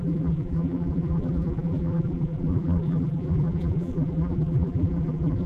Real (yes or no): no